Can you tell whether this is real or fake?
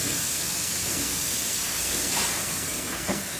fake